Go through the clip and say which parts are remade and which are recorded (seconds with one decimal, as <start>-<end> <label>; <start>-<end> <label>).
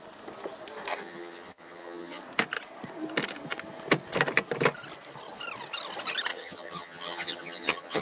0.0-0.9 recorded; 0.9-2.2 remade; 2.2-6.3 recorded; 6.3-8.0 remade